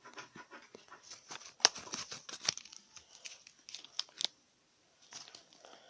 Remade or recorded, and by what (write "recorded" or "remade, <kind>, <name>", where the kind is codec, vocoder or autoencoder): recorded